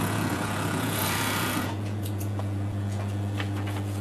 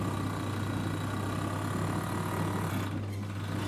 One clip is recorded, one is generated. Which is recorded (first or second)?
second